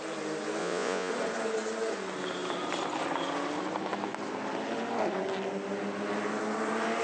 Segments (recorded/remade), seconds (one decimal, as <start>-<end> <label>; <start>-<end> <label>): 0.0-0.6 recorded; 0.6-1.1 remade; 1.1-7.0 recorded